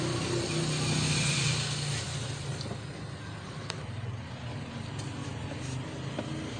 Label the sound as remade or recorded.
recorded